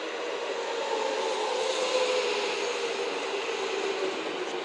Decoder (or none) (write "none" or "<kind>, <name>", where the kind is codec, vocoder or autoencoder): none